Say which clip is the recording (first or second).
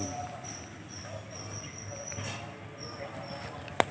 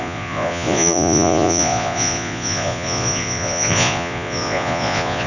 first